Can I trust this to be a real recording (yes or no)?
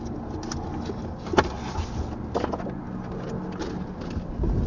yes